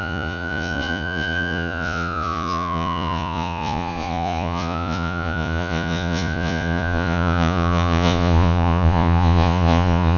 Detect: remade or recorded remade